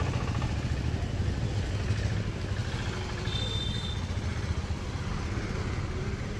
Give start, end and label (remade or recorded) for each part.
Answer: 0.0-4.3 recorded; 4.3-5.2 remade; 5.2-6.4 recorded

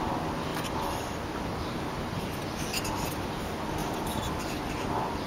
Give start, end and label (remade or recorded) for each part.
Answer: 0.0-5.3 recorded